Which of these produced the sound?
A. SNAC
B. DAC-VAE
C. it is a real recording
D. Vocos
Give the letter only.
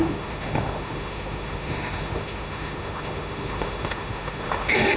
B